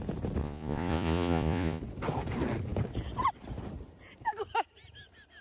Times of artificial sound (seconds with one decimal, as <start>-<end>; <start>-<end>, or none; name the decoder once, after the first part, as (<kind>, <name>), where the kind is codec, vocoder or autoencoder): 0.4-1.8 (vocoder, Vocos)